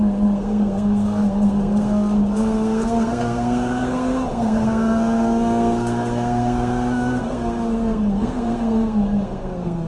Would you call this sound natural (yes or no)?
no